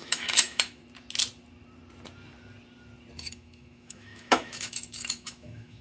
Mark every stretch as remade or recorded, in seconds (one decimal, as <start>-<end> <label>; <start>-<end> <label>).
0.0-0.8 remade; 0.8-3.2 recorded; 3.2-5.8 remade